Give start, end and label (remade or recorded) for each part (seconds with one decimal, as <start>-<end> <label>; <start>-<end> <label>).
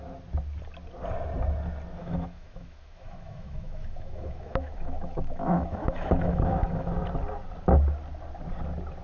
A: 0.0-2.0 recorded; 2.0-6.9 remade; 6.9-9.0 recorded